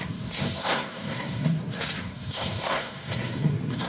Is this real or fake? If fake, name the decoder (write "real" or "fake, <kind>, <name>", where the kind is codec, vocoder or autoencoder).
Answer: fake, codec, SNAC